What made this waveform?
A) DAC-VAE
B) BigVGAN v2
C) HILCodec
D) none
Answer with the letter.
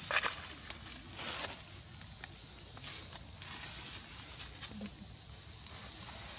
D